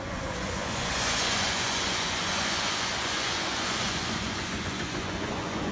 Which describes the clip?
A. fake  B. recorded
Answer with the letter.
A